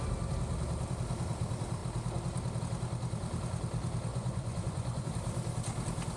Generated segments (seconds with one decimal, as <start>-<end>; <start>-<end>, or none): 4.1-5.1